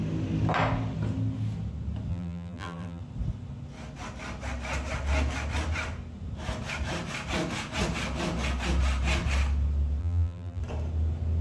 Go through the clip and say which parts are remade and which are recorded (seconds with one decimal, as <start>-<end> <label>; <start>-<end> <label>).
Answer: 0.0-2.1 recorded; 2.1-3.0 remade; 3.0-10.0 recorded; 10.0-10.6 remade; 10.6-11.4 recorded

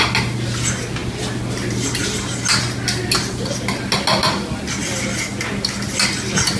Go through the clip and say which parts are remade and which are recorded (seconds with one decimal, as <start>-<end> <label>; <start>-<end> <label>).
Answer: 0.0-6.6 recorded

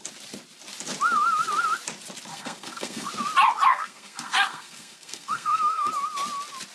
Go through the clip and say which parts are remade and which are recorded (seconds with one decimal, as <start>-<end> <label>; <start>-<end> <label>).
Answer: 0.0-2.3 recorded; 2.3-3.1 remade; 3.1-3.7 recorded; 3.7-5.9 remade; 5.9-6.7 recorded

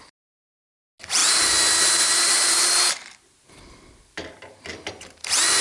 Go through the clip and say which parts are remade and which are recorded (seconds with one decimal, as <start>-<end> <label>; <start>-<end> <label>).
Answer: 0.0-5.6 recorded

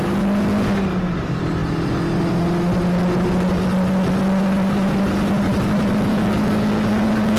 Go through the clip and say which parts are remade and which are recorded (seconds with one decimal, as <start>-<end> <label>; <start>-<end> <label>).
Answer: 0.0-6.1 recorded; 6.1-7.4 remade

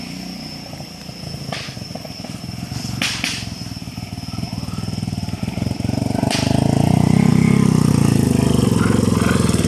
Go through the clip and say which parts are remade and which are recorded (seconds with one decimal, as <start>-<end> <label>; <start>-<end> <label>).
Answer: 0.0-9.7 recorded